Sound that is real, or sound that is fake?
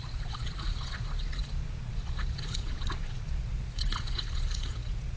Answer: fake